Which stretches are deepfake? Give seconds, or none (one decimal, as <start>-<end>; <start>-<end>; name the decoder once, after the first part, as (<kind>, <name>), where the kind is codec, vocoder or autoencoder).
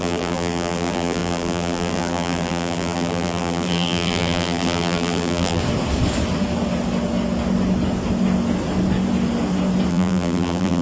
0.0-5.6 (vocoder, BigVGAN v2); 9.9-10.8